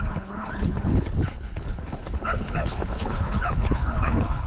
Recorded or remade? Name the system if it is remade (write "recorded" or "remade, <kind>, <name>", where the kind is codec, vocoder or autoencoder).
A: remade, codec, HILCodec